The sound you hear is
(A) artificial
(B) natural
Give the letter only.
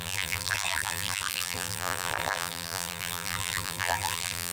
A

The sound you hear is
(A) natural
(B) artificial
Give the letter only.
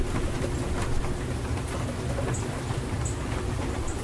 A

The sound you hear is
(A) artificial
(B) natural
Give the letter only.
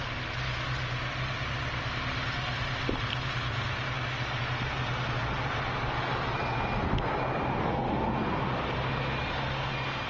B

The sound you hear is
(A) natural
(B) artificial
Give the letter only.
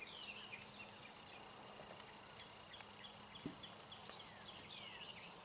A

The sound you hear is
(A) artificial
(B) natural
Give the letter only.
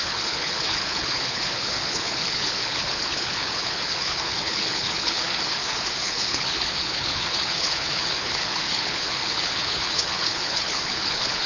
A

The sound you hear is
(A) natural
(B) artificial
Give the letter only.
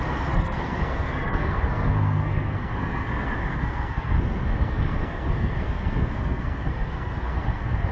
B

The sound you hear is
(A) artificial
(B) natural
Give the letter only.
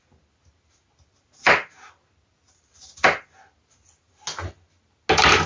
B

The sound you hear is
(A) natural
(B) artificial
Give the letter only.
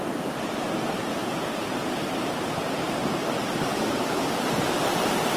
B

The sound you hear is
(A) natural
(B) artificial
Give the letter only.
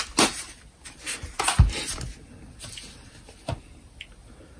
A